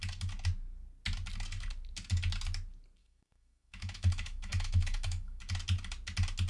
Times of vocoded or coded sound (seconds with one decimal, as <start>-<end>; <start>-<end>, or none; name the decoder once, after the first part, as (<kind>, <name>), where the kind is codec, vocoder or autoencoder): 3.0-5.4 (autoencoder, DAC-VAE)